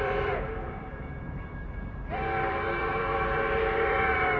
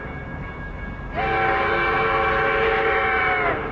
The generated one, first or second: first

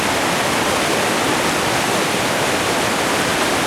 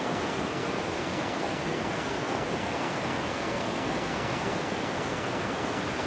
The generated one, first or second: second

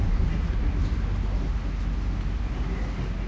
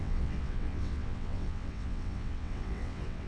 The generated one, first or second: second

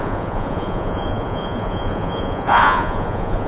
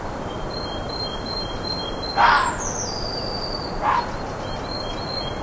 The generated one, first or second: first